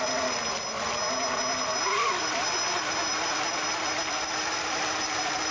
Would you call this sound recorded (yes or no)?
yes